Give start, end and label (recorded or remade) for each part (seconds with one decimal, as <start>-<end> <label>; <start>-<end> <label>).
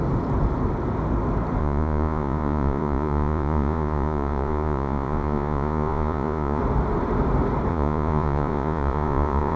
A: 0.0-1.6 recorded; 1.6-6.6 remade; 6.6-7.7 recorded; 7.7-9.6 remade